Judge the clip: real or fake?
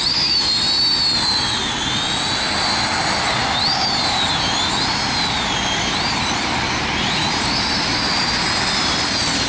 real